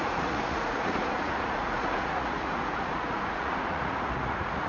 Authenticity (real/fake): fake